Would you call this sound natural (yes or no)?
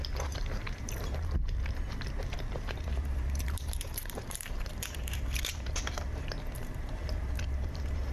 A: no